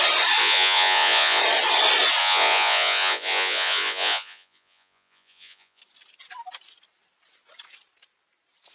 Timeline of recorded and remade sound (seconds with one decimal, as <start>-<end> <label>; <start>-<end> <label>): 0.0-0.4 recorded; 0.4-1.4 remade; 1.4-2.2 recorded; 2.2-5.8 remade; 5.8-8.7 recorded